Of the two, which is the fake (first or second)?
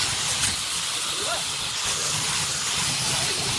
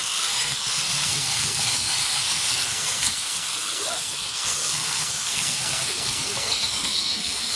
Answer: second